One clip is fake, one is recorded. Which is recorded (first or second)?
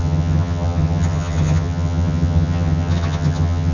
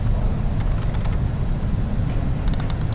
second